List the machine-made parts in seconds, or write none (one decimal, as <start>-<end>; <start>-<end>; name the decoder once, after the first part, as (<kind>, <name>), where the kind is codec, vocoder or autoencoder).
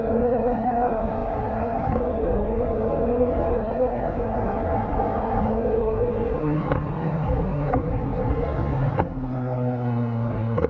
0.0-10.7 (codec, SNAC)